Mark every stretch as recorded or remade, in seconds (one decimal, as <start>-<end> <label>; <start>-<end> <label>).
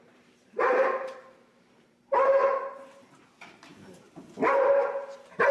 0.0-4.8 remade; 4.8-5.5 recorded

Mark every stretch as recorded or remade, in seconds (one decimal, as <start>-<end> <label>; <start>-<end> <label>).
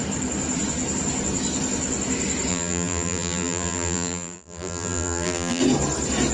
0.0-2.5 recorded; 2.5-5.6 remade; 5.6-6.3 recorded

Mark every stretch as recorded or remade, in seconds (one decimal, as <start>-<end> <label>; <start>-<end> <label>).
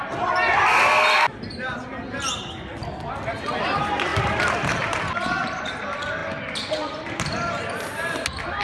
0.0-4.1 recorded; 4.1-5.6 remade; 5.6-8.6 recorded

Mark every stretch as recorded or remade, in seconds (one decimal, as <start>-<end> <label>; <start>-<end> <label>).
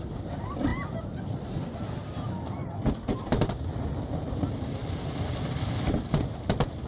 0.0-4.8 recorded; 4.8-6.9 remade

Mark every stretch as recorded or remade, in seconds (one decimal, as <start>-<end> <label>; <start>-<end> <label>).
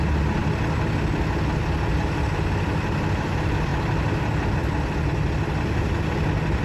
0.0-6.6 recorded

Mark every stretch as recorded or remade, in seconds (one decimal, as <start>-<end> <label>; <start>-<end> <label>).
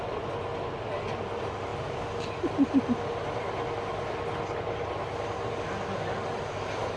0.0-7.0 recorded